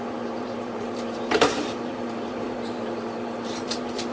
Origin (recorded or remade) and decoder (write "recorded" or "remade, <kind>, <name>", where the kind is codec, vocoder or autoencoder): remade, vocoder, BigVGAN v2